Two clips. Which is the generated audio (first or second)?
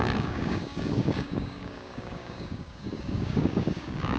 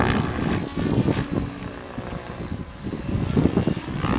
first